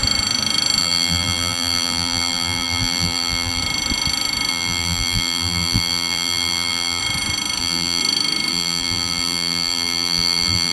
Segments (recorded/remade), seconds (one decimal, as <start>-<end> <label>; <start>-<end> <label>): 0.0-0.8 recorded; 0.8-3.6 remade; 3.6-4.5 recorded; 4.5-7.0 remade; 7.0-7.6 recorded; 7.6-8.0 remade; 8.0-8.5 recorded; 8.5-10.7 remade